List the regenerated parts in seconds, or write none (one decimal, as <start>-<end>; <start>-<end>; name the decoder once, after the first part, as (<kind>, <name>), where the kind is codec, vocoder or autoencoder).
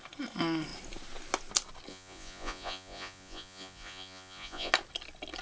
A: 1.9-4.7 (vocoder, Vocos)